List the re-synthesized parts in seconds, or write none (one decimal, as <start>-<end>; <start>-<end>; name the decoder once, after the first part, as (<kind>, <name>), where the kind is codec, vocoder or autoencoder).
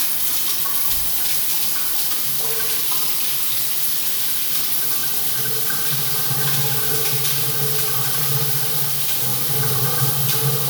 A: 5.0-8.2 (vocoder, BigVGAN v2); 9.3-10.1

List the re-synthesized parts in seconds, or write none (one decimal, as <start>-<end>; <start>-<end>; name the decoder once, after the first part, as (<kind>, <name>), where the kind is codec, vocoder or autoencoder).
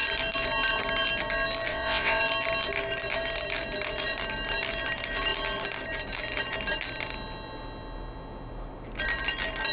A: 1.7-2.2 (vocoder, WaveNeXt)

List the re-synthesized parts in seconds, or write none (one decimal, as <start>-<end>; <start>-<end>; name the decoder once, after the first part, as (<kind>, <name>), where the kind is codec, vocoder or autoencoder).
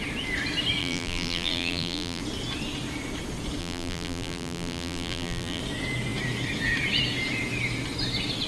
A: 0.8-2.2 (vocoder, BigVGAN v2); 3.6-5.6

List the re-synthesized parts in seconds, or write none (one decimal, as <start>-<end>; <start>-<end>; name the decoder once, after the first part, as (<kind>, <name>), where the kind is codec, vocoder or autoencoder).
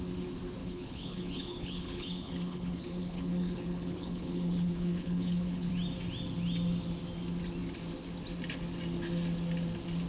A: 0.6-5.7 (codec, HILCodec)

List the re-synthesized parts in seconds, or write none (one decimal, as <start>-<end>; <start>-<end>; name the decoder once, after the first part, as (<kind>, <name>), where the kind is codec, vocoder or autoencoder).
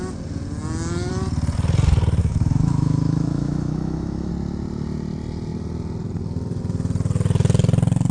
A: 2.2-4.3 (autoencoder, DAC-VAE)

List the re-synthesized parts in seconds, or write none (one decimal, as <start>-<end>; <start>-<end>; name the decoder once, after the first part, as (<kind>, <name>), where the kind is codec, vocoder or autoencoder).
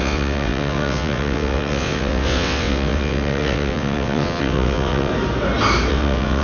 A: 0.0-5.1 (vocoder, WaveNeXt); 5.9-6.4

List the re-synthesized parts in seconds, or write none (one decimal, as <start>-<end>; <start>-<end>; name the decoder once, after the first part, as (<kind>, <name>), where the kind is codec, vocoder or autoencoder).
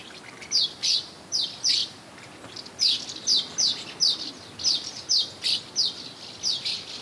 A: none